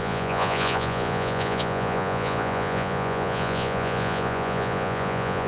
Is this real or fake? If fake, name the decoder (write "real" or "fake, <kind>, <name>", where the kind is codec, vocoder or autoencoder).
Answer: fake, vocoder, Vocos